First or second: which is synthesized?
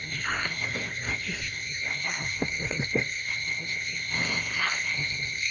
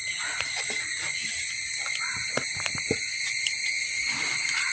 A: first